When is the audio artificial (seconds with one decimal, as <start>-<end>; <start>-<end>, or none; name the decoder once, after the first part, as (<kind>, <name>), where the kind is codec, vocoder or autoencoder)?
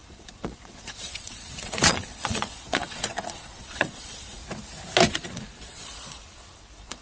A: 0.0-4.4 (vocoder, Vocos); 5.1-7.0